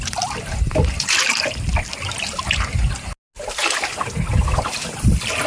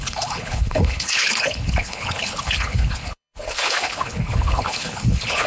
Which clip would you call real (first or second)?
first